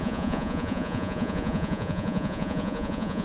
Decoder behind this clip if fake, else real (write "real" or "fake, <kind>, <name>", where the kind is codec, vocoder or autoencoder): fake, vocoder, Vocos